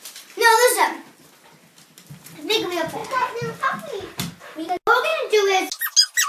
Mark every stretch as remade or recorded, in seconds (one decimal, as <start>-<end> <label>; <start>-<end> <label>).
0.0-6.3 recorded